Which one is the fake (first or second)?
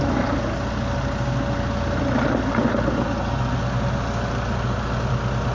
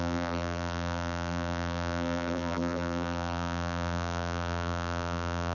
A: second